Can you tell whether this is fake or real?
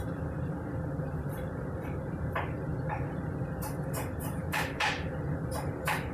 fake